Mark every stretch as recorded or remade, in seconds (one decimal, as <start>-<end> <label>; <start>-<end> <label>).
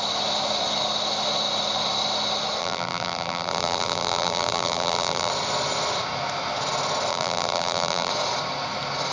0.0-2.6 recorded; 2.6-5.3 remade; 5.3-7.1 recorded; 7.1-8.1 remade; 8.1-9.1 recorded